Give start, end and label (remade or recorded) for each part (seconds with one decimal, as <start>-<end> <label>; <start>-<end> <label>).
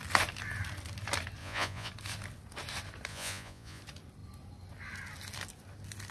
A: 0.0-1.4 recorded; 1.4-1.9 remade; 1.9-3.1 recorded; 3.1-3.8 remade; 3.8-6.1 recorded